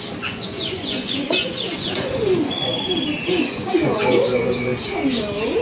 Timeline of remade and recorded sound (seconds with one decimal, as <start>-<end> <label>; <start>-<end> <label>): 0.0-2.9 remade; 2.9-3.4 recorded; 3.4-4.7 remade; 4.7-5.6 recorded